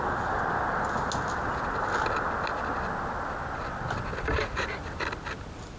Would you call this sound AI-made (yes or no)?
no